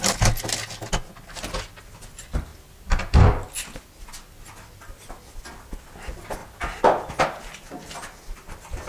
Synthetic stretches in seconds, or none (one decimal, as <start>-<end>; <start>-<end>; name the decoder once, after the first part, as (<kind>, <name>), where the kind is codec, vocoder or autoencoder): none